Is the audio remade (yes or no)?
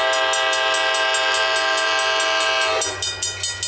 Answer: no